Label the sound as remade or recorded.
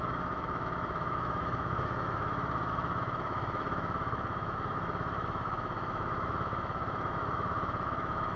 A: remade